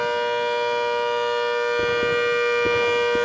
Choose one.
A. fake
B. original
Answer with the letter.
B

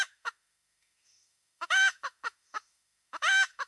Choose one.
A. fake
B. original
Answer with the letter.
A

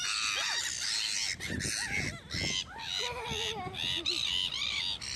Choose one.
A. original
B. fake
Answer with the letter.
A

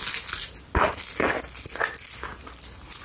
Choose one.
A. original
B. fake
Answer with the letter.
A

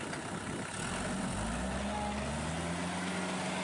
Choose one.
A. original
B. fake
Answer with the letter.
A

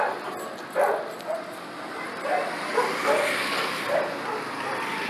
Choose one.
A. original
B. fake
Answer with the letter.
A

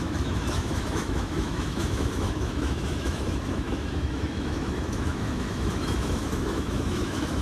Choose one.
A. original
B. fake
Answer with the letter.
B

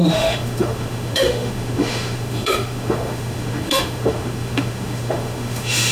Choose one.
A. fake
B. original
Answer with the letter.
A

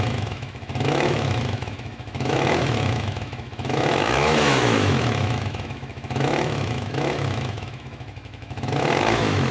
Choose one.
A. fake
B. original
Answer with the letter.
A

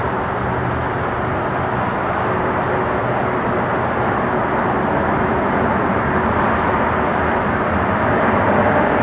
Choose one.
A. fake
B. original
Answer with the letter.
B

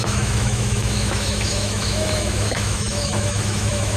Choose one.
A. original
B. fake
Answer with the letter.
B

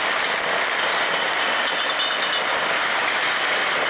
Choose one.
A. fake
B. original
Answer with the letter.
B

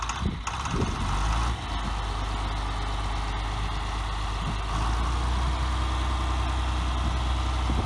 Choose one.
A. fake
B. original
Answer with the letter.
B